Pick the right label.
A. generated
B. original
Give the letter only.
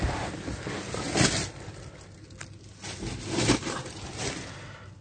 B